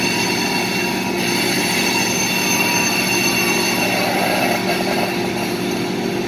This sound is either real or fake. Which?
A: real